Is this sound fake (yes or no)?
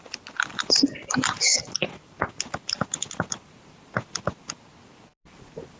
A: no